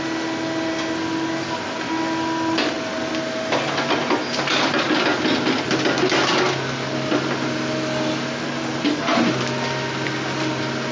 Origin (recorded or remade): recorded